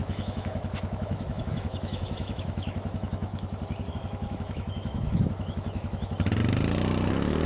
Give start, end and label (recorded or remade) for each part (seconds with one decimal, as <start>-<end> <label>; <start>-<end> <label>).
0.0-3.3 remade; 3.3-3.9 recorded; 3.9-6.4 remade; 6.4-7.1 recorded; 7.1-7.5 remade